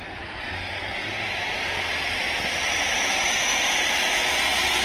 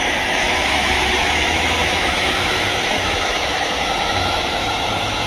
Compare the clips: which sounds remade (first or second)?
second